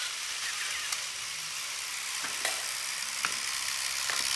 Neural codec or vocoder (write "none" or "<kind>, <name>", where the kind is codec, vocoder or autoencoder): none